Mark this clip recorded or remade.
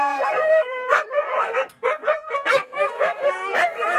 remade